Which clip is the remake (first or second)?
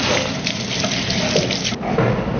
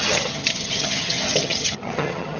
second